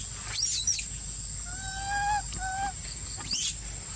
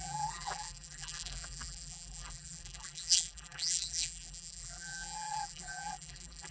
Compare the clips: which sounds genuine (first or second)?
first